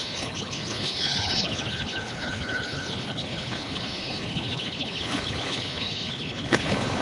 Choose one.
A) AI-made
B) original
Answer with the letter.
A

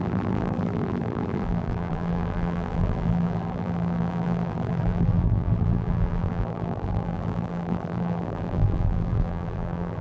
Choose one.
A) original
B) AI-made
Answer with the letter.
B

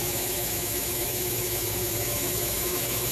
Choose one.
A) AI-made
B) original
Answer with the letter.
A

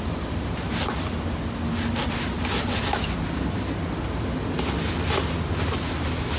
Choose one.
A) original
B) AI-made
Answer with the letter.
A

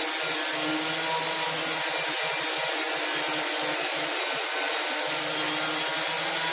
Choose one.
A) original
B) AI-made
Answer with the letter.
A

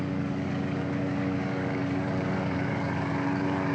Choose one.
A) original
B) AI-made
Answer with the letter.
B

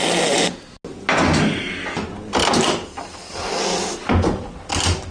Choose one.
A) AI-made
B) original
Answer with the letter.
B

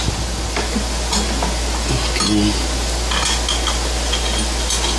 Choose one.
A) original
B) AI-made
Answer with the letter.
A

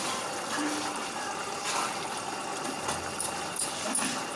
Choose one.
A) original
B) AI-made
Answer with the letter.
A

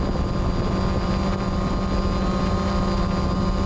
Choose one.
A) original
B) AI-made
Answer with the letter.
A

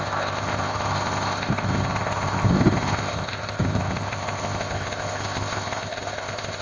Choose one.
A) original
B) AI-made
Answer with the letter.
B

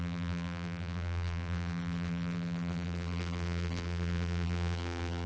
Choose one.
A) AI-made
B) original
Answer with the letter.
A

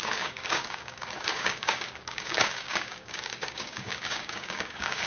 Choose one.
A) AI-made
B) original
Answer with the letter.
A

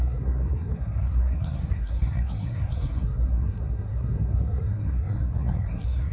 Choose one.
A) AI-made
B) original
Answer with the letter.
A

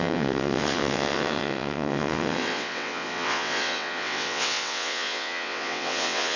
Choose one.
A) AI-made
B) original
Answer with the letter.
A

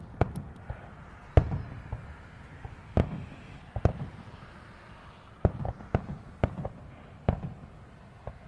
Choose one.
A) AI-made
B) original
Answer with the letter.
B